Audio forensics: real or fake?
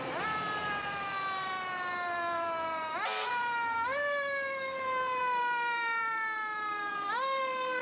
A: fake